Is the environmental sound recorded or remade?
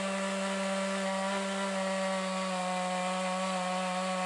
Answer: recorded